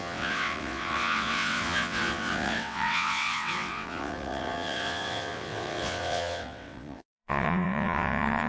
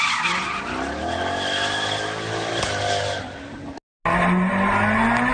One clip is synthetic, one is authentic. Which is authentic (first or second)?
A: second